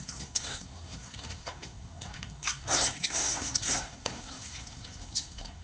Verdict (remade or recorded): remade